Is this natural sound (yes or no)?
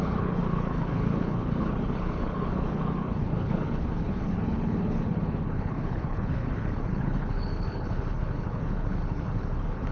no